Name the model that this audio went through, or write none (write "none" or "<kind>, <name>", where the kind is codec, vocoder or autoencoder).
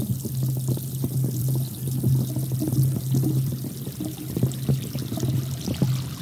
vocoder, BigVGAN v2